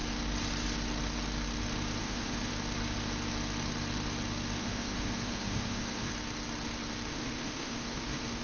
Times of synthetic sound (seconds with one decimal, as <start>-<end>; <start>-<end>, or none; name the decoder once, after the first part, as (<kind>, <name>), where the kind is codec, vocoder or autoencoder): 2.0-2.5 (autoencoder, DAC-VAE); 4.6-6.1; 7.1-8.4